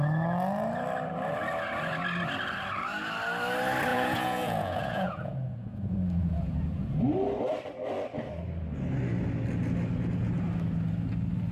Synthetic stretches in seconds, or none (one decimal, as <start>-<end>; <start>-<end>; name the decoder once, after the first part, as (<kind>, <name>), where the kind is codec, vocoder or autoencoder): 3.9-7.0 (vocoder, Vocos)